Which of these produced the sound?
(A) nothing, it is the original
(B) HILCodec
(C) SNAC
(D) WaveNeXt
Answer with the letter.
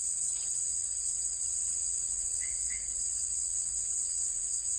D